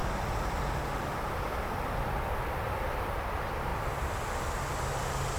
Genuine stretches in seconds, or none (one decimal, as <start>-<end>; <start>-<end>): 0.0-5.4